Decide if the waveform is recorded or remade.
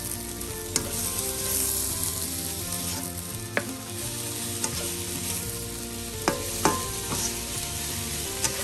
recorded